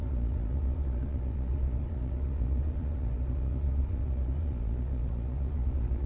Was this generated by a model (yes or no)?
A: yes